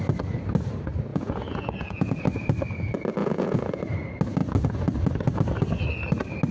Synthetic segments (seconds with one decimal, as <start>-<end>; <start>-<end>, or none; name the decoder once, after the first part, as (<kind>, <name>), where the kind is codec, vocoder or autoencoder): 1.1-2.2 (vocoder, Vocos); 3.2-3.8